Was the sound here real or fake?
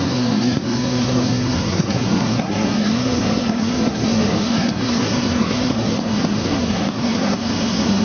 fake